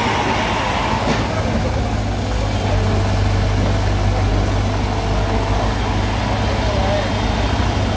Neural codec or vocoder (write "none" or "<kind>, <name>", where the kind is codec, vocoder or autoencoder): none